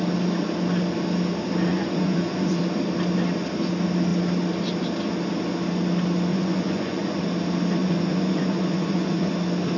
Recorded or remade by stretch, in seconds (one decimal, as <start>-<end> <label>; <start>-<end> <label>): 0.0-1.7 recorded; 1.7-2.6 remade; 2.6-6.3 recorded; 6.3-7.2 remade; 7.2-7.8 recorded; 7.8-9.3 remade; 9.3-9.8 recorded